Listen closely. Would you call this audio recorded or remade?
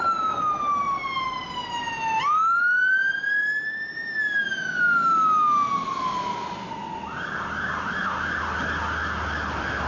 recorded